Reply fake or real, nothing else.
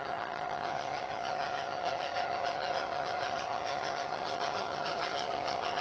fake